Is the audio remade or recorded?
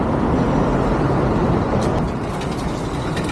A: recorded